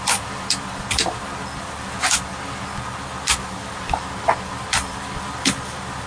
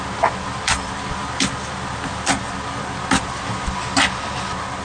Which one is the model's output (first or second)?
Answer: first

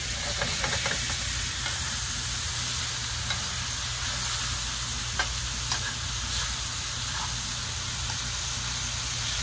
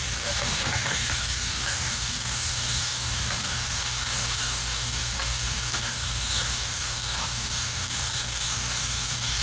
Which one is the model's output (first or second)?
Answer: second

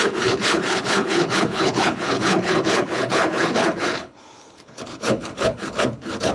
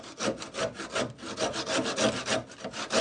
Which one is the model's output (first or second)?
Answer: first